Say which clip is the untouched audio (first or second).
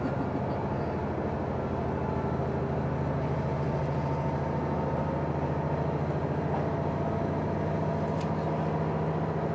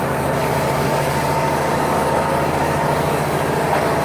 first